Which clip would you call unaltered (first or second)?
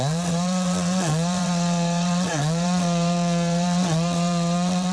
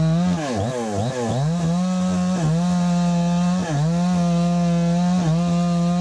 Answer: second